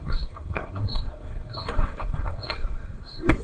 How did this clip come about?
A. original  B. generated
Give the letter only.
B